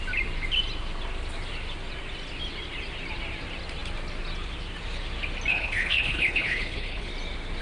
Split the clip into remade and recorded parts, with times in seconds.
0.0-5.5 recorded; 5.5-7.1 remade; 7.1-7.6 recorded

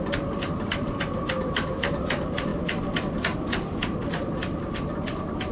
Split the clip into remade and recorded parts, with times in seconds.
0.0-5.5 recorded

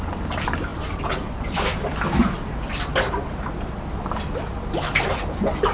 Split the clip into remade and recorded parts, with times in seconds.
0.0-5.7 recorded

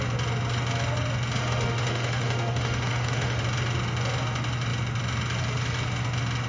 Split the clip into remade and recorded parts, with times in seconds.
0.0-1.4 recorded; 1.4-3.4 remade; 3.4-6.5 recorded

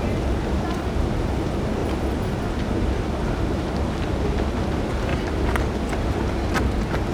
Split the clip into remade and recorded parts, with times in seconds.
0.0-7.1 recorded

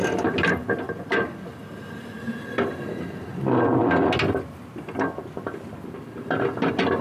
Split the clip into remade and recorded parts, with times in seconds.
0.0-7.0 recorded

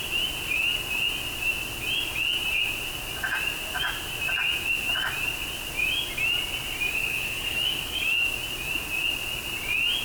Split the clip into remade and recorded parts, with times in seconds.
0.0-7.0 recorded; 7.0-8.0 remade; 8.0-10.0 recorded